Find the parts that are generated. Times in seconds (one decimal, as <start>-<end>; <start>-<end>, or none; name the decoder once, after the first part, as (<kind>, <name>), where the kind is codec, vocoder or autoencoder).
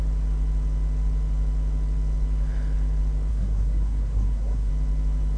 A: 3.3-4.7 (codec, SNAC)